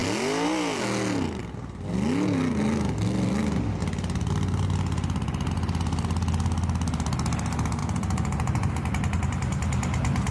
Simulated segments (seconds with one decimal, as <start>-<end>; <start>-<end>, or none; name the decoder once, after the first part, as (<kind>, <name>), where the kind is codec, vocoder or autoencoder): 7.8-8.7 (vocoder, Vocos)